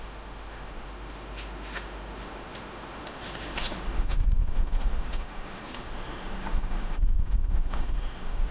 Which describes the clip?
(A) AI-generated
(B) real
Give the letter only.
A